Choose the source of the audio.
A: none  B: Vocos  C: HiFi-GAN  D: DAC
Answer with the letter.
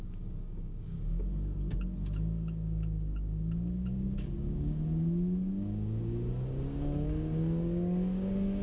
D